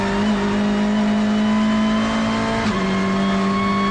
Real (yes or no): yes